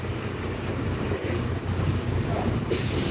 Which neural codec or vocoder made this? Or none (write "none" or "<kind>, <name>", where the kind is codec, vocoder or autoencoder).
codec, DAC